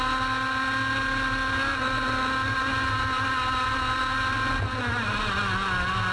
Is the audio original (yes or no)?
yes